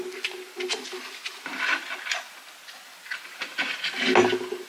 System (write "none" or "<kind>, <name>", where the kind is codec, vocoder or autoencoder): none